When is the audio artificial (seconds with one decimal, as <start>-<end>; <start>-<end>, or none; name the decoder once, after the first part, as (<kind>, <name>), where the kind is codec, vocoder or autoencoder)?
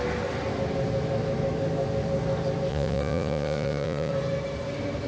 2.7-4.1 (vocoder, Vocos)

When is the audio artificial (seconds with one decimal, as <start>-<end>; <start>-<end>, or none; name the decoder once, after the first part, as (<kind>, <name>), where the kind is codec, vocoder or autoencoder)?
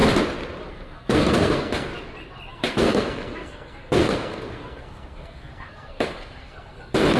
0.7-1.9 (codec, SNAC); 2.5-7.2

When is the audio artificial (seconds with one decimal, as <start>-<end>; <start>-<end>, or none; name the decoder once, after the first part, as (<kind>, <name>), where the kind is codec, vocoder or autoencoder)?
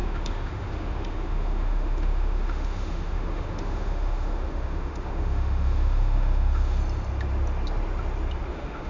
0.0-6.8 (autoencoder, DAC-VAE); 8.5-8.9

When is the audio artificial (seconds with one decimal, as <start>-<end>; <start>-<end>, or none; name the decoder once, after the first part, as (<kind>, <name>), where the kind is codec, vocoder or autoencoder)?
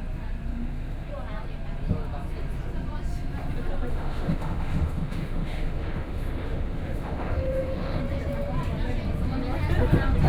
0.5-1.1 (autoencoder, DAC-VAE); 3.9-8.0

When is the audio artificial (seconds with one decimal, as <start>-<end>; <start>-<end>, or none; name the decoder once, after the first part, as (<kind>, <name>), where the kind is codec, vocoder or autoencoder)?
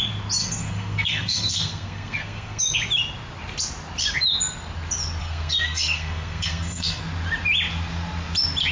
0.4-2.6 (codec, SNAC); 5.2-7.0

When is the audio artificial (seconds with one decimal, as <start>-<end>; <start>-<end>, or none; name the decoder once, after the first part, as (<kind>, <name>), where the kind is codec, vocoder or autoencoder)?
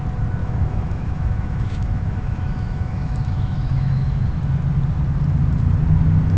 0.4-4.2 (autoencoder, DAC-VAE)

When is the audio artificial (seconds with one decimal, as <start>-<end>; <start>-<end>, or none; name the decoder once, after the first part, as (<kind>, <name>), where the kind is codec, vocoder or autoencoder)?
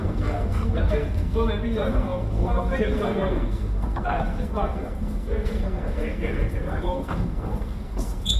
0.0-8.4 (codec, SNAC)